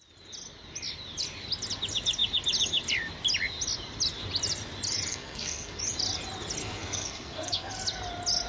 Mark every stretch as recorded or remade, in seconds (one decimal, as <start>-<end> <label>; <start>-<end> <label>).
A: 0.0-5.1 recorded; 5.1-5.8 remade; 5.8-6.6 recorded; 6.6-7.7 remade; 7.7-8.5 recorded